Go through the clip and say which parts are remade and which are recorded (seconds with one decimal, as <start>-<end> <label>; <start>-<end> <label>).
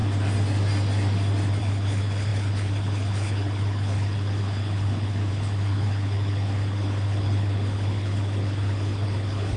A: 0.0-1.6 recorded; 1.6-9.6 remade